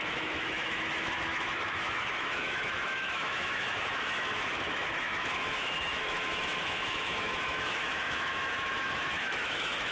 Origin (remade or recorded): remade